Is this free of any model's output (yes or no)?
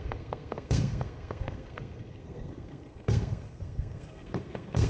no